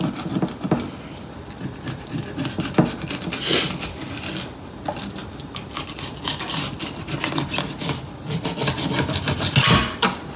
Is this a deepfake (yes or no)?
no